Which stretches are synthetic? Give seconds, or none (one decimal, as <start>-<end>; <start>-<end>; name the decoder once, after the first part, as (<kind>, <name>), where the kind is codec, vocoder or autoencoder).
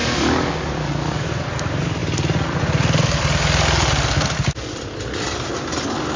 0.0-1.3 (codec, DAC)